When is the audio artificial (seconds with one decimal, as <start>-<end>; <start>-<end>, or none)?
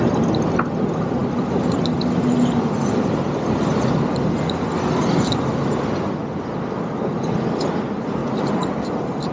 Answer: 8.2-8.8